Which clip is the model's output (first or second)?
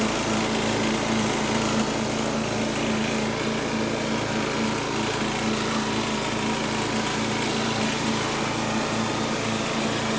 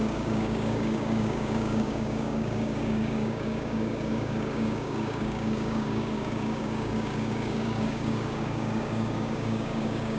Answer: second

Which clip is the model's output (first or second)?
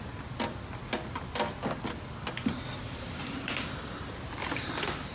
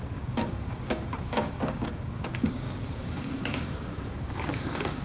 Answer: second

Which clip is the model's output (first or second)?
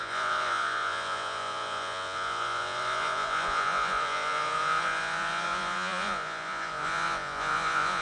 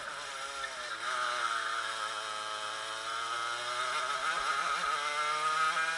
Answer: first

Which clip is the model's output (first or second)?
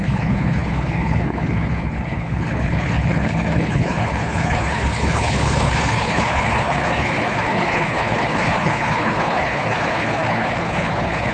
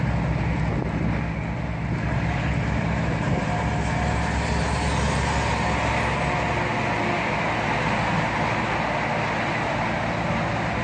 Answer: first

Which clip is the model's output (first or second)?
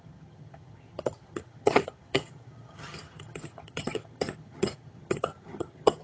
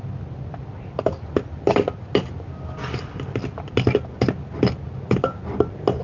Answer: first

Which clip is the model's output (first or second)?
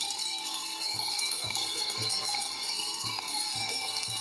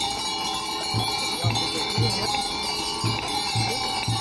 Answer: first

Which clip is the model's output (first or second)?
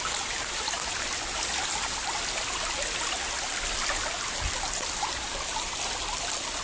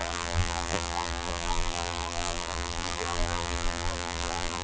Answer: second